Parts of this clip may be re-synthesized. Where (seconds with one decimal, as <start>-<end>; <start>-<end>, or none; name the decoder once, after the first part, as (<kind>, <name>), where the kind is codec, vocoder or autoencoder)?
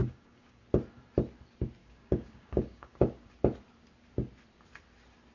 0.0-0.6 (codec, DAC); 1.8-3.3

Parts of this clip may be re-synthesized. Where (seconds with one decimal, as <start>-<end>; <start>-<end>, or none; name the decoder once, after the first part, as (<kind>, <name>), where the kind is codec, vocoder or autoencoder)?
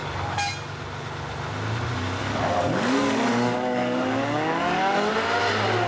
0.0-0.5 (codec, DAC); 2.2-5.1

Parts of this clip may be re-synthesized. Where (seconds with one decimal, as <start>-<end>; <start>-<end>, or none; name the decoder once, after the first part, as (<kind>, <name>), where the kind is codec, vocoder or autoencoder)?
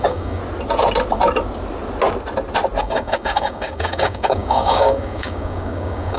0.0-0.4 (codec, DAC); 2.8-6.2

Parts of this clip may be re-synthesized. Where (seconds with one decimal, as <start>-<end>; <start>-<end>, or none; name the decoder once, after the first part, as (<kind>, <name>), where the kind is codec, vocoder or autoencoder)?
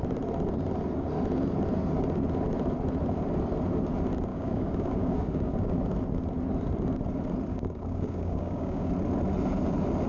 4.3-5.8 (codec, DAC); 7.5-8.9